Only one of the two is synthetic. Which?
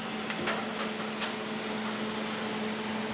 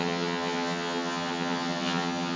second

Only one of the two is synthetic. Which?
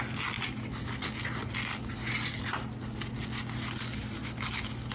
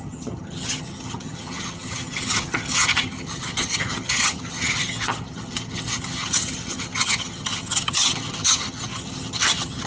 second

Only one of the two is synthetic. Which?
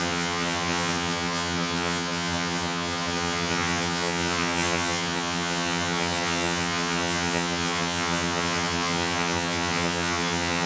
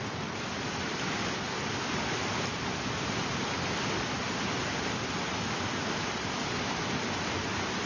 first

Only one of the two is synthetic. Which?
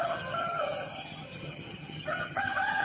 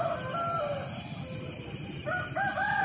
first